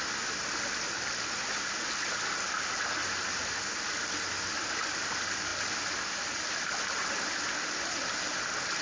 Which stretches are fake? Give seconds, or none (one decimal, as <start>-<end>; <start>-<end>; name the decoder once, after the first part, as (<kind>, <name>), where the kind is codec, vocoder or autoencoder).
none